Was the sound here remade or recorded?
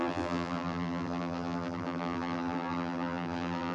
remade